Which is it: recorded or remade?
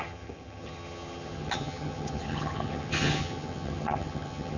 remade